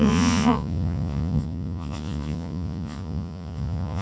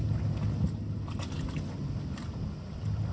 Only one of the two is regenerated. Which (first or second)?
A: first